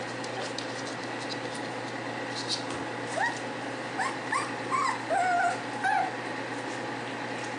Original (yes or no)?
yes